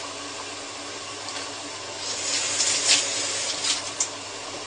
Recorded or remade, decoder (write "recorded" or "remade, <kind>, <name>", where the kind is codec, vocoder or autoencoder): recorded